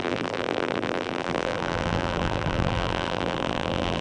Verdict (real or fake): fake